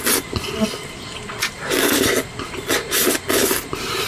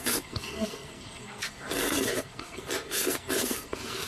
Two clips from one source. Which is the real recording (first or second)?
first